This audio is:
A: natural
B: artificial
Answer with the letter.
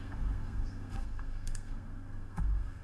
B